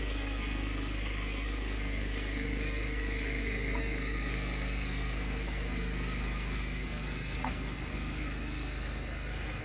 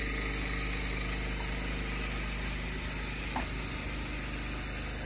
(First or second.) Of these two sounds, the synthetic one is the first